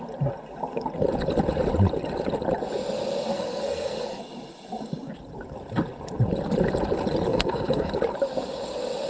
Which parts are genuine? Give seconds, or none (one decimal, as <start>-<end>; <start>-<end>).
0.0-3.3; 4.2-7.3; 7.9-9.1